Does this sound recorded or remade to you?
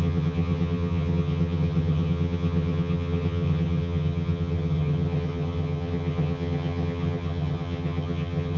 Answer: remade